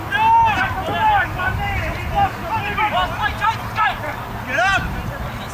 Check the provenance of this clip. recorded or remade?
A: recorded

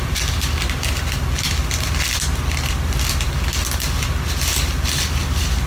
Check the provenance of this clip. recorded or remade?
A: recorded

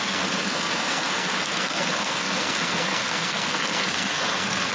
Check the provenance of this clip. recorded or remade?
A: remade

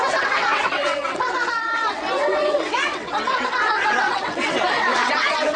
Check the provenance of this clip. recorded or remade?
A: remade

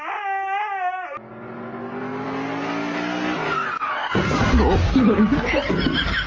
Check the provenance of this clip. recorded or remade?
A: recorded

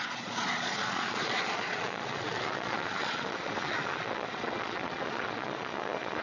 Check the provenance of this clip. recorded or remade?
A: remade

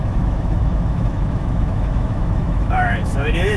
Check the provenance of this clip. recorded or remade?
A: remade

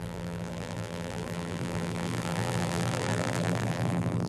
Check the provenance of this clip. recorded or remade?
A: remade